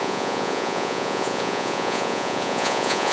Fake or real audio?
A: fake